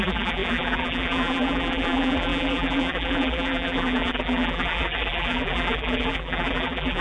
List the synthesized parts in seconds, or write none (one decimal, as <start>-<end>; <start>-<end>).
0.0-7.0